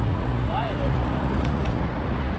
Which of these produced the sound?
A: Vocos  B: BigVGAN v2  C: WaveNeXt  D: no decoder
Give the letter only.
A